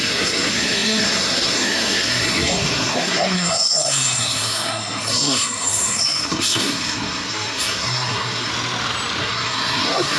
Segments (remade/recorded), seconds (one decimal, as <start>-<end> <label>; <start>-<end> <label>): 0.0-8.5 remade; 8.5-9.2 recorded; 9.2-10.2 remade